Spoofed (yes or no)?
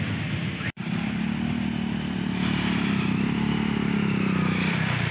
no